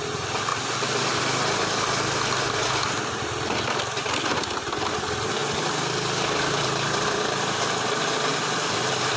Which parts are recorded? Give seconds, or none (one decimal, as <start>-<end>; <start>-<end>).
0.5-3.0